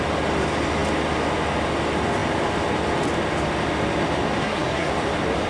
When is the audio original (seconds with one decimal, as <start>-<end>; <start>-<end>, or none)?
0.0-4.4; 4.9-5.5